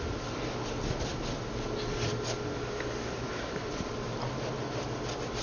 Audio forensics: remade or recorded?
recorded